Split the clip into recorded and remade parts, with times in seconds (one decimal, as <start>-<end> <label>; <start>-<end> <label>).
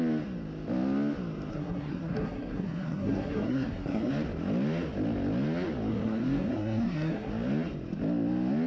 0.0-1.5 recorded; 1.5-4.1 remade; 4.1-5.9 recorded; 5.9-7.3 remade; 7.3-8.7 recorded